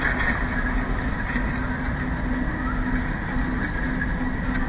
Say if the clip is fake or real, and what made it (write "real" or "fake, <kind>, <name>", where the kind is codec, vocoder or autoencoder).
real